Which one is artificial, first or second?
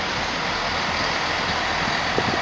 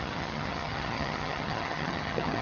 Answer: second